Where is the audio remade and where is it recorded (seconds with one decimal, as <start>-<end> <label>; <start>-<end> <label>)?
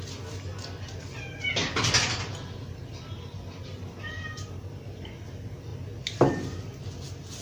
0.0-7.4 recorded